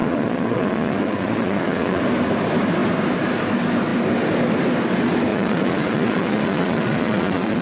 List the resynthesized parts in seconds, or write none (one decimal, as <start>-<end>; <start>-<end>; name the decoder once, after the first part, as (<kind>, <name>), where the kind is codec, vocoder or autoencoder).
0.0-2.0 (vocoder, Vocos); 5.3-7.6